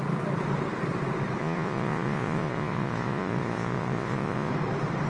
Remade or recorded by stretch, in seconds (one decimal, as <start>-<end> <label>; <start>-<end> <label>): 0.0-1.4 recorded; 1.4-4.5 remade; 4.5-5.1 recorded